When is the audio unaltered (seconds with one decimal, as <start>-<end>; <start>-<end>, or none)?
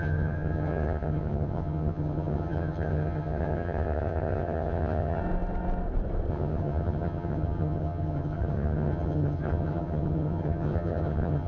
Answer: 5.2-6.3